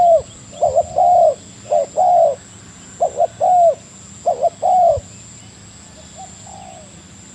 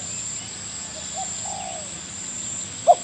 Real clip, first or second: first